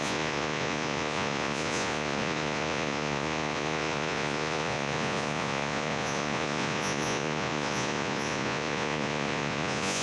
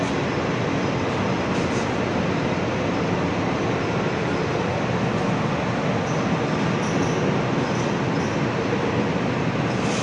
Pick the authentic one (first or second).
second